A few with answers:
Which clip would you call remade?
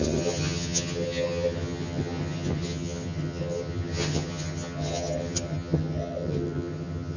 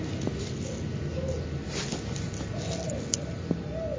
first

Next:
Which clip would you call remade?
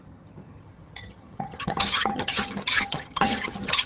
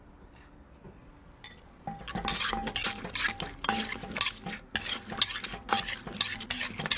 first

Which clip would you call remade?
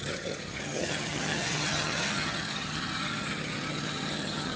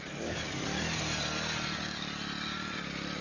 first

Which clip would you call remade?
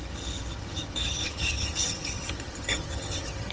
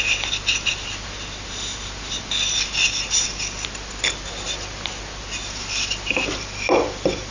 first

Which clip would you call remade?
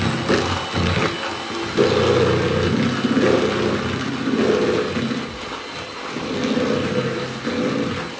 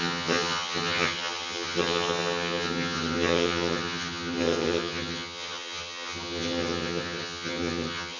second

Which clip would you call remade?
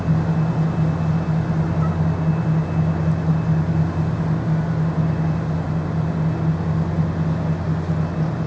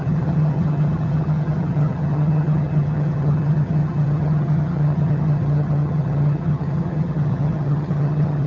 second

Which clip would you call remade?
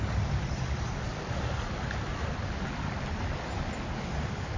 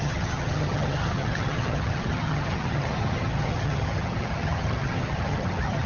second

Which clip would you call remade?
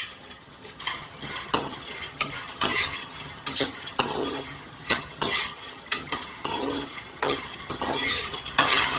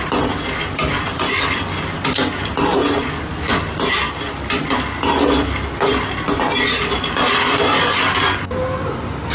first